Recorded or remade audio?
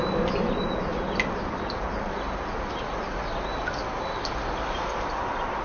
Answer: recorded